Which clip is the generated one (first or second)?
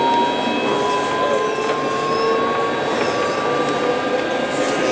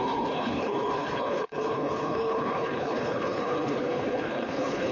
second